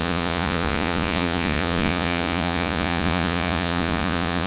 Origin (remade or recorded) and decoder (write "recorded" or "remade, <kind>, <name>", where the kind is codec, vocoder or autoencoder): remade, vocoder, Vocos